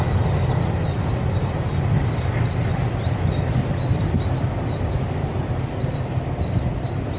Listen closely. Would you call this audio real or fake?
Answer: real